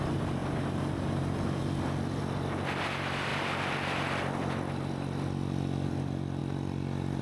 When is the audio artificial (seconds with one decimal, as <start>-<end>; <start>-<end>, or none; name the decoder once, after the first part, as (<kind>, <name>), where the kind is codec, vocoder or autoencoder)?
none